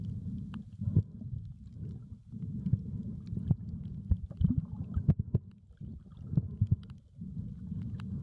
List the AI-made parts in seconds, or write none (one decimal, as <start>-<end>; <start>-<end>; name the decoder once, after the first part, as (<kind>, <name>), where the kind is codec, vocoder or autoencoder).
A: 5.9-8.2 (vocoder, BigVGAN v2)